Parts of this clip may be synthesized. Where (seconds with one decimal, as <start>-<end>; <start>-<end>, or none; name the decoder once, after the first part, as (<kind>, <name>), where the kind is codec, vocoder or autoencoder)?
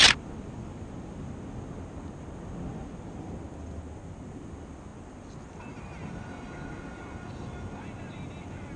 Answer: none